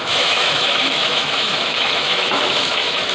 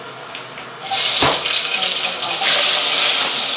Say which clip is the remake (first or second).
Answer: first